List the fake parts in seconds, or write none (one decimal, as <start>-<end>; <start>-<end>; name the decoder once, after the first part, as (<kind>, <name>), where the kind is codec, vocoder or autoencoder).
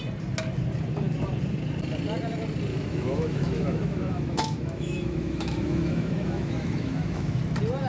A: 2.7-7.4 (autoencoder, DAC-VAE)